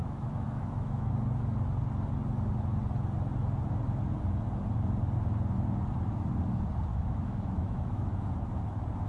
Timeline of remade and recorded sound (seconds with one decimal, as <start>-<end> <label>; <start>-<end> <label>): 0.0-1.1 remade; 1.1-6.9 recorded; 6.9-8.3 remade; 8.3-9.1 recorded